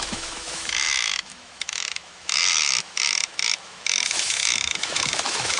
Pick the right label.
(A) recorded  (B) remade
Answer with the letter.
B